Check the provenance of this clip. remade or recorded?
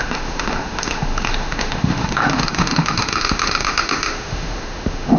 remade